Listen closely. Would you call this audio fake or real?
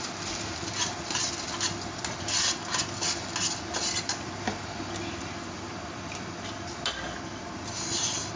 real